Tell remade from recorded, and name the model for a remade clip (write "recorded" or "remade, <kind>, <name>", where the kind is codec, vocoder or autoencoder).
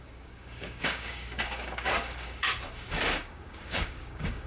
remade, codec, DAC